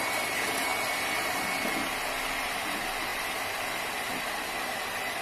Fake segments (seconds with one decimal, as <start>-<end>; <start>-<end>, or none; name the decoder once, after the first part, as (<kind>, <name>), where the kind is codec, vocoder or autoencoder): none